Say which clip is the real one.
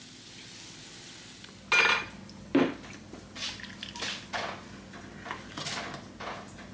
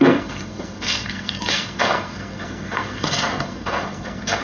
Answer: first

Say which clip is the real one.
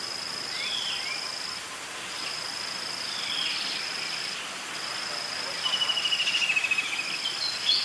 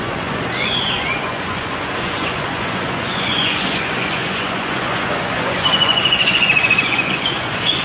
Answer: first